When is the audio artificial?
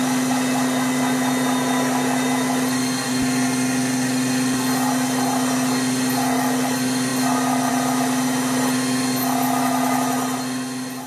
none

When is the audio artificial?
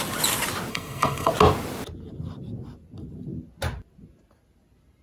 0.7-1.3 (codec, SNAC)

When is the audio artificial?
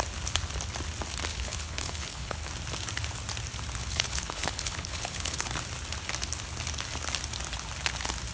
1.3-2.5 (codec, HILCodec); 3.8-5.5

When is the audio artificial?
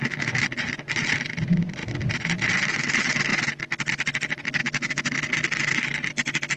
4.6-5.2 (autoencoder, DAC-VAE)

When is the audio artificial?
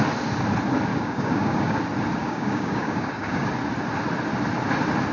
0.9-1.8 (codec, DAC); 2.2-3.5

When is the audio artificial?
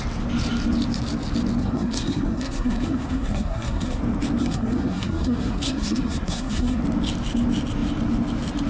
1.6-4.0 (codec, SNAC); 4.4-6.8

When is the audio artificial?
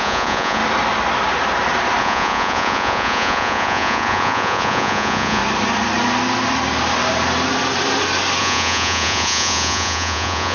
0.0-0.6 (vocoder, Vocos); 2.0-5.4; 8.4-10.5